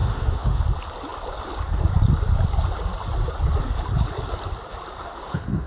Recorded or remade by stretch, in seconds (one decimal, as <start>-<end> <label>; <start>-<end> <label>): 0.0-0.6 remade; 0.6-5.0 recorded; 5.0-5.7 remade